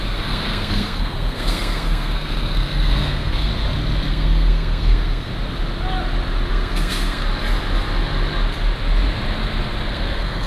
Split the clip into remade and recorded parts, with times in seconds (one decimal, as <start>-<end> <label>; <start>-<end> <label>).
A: 0.0-3.5 remade; 3.5-4.1 recorded; 4.1-5.3 remade; 5.3-6.5 recorded; 6.5-7.3 remade; 7.3-9.9 recorded; 9.9-10.5 remade